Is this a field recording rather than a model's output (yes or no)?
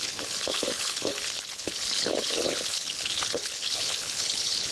no